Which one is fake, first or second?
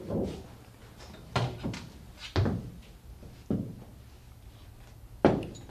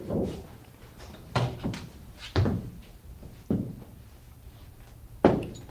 second